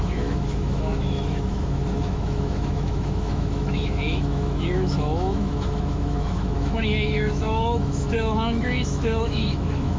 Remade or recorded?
remade